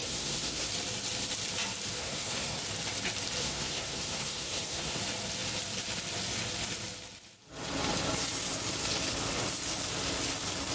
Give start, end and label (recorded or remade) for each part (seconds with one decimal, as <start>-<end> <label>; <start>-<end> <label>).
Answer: 0.0-0.7 remade; 0.7-2.0 recorded; 2.0-2.6 remade; 2.6-3.4 recorded; 3.4-5.0 remade; 5.0-10.7 recorded